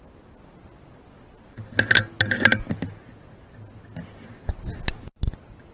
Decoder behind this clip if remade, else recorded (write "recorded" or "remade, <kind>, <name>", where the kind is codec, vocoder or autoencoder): recorded